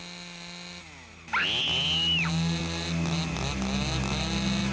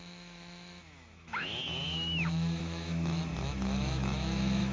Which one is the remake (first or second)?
second